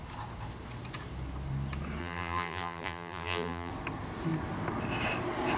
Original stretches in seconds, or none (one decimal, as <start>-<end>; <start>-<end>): 0.0-2.0; 3.7-5.6